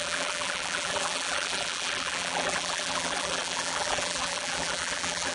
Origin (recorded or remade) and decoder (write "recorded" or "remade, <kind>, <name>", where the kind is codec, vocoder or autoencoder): remade, vocoder, BigVGAN v2